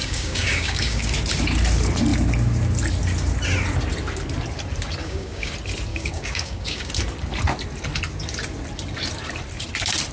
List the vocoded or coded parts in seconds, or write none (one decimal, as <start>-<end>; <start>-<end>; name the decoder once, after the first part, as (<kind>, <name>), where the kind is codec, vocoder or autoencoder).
0.0-1.1 (codec, DAC); 5.0-5.5; 5.9-6.9

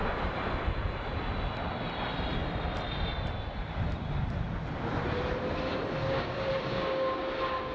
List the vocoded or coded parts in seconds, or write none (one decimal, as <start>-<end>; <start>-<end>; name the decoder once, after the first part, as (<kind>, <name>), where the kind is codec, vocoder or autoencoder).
6.0-7.7 (codec, DAC)

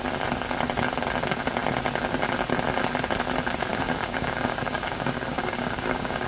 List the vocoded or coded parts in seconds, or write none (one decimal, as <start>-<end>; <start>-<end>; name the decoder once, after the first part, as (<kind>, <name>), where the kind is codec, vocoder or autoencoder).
3.7-6.3 (codec, DAC)